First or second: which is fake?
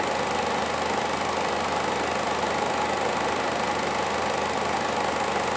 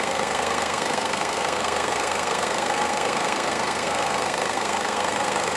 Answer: second